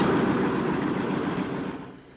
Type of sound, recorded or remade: recorded